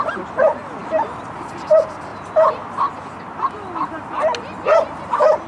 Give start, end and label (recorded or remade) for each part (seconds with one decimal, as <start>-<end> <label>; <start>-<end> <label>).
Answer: 0.0-5.5 recorded